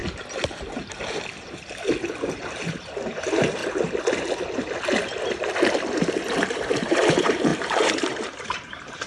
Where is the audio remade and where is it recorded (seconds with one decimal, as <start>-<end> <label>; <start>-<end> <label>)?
0.0-2.0 recorded; 2.0-3.6 remade; 3.6-6.5 recorded; 6.5-9.1 remade